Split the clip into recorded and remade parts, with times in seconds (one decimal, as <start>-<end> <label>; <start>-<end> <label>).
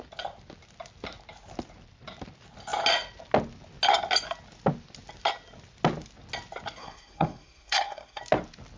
0.0-6.8 recorded; 6.8-8.2 remade; 8.2-8.8 recorded